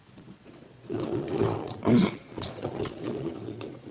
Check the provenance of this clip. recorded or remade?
remade